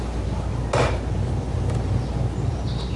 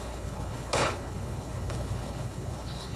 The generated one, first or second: second